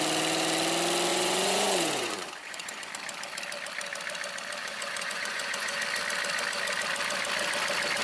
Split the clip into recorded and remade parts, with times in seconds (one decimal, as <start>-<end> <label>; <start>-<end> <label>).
0.0-1.1 recorded; 1.1-2.9 remade; 2.9-4.6 recorded; 4.6-5.8 remade; 5.8-8.0 recorded